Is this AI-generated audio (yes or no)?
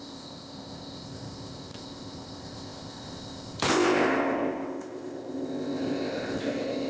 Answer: yes